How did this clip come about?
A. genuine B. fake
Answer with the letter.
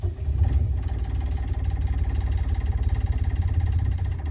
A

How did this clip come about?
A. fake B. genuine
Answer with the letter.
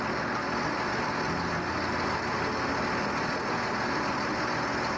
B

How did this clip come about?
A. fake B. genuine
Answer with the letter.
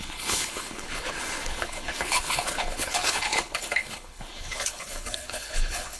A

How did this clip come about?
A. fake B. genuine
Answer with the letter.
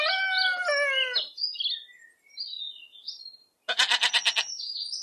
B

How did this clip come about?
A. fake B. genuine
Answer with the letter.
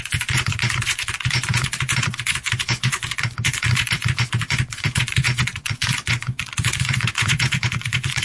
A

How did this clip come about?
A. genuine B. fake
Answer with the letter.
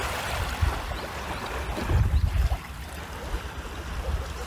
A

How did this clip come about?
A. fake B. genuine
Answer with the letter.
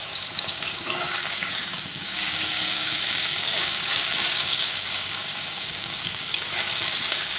A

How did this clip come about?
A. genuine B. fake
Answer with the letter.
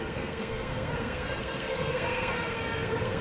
B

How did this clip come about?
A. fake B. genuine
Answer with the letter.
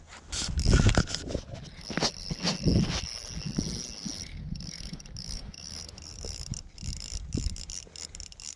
B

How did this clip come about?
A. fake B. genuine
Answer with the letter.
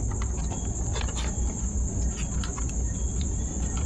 B